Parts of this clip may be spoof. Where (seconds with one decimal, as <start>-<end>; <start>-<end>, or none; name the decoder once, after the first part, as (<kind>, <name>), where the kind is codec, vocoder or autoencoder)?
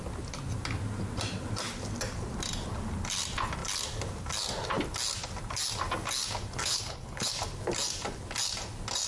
6.6-7.3 (codec, HILCodec)